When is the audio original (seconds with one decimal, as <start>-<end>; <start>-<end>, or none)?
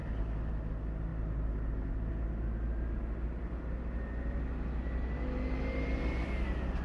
0.0-6.8